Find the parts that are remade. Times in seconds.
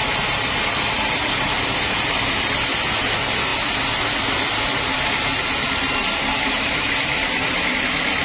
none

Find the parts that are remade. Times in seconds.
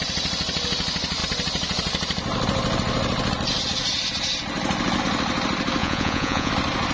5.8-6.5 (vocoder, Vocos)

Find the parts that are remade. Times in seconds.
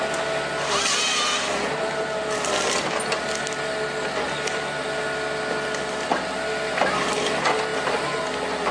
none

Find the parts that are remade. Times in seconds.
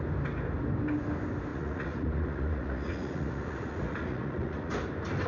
1.5-4.7 (vocoder, Vocos)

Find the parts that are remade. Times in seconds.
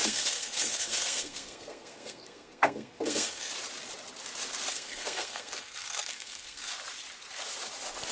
0.0-3.5 (codec, SNAC); 4.7-6.7